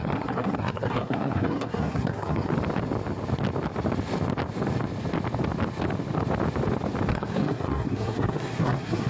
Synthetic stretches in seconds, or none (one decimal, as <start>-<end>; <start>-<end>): 0.0-2.5; 7.1-9.1